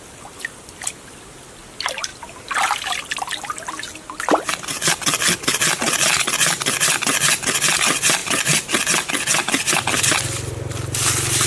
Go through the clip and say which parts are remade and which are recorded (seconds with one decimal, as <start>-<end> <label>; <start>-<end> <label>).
0.0-11.5 recorded